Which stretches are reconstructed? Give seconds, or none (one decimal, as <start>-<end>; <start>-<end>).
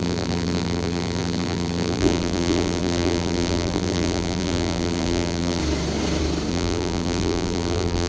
0.0-5.6; 6.5-8.1